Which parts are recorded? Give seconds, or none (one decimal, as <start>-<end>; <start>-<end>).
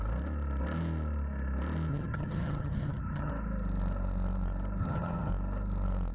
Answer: 0.0-1.9; 3.3-4.8; 5.3-6.1